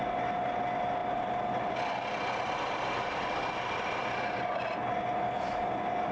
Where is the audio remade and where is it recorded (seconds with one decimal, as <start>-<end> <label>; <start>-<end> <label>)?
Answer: 0.0-6.1 recorded